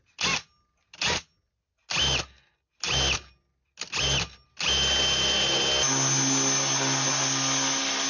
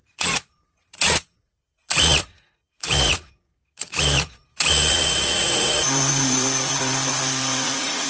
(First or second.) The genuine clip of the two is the first